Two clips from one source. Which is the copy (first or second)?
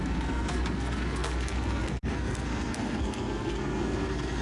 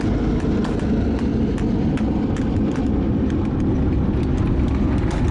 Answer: first